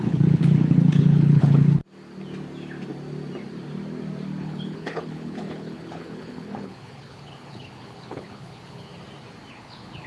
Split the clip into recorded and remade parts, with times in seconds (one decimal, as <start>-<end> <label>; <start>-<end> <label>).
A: 0.0-1.8 remade; 1.8-4.4 recorded; 4.4-8.9 remade; 8.9-9.5 recorded; 9.5-10.1 remade